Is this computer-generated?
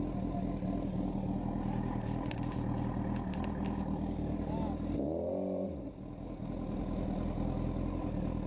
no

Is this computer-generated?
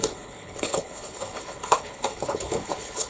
yes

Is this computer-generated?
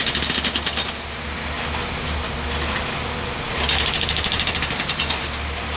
no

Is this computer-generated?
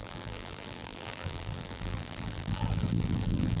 yes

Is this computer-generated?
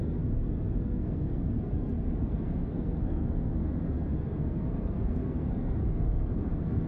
yes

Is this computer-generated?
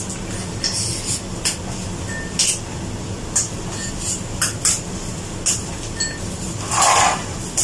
no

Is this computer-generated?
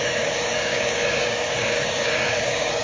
yes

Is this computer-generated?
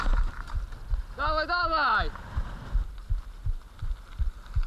no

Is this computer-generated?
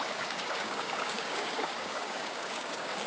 yes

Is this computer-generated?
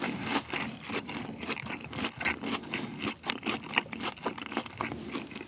no